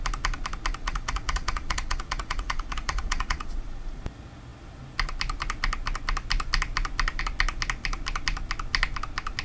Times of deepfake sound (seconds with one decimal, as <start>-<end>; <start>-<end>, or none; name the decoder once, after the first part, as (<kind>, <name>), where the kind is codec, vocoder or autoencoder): 0.8-4.0 (vocoder, Vocos)

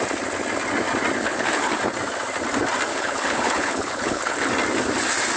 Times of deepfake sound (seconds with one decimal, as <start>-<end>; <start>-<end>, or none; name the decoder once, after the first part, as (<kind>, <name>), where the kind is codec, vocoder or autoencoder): 1.2-1.8 (codec, HILCodec); 2.9-4.5